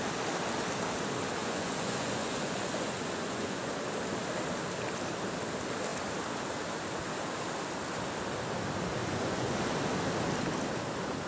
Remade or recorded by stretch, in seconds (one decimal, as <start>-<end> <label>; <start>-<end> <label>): 0.0-1.4 recorded; 1.4-3.7 remade; 3.7-9.0 recorded; 9.0-9.6 remade; 9.6-11.3 recorded